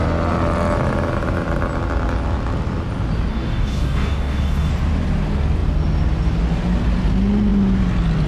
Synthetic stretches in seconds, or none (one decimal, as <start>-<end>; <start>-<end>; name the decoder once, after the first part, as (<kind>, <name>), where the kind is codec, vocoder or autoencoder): 3.3-4.7 (codec, DAC)